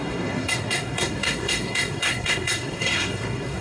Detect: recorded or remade remade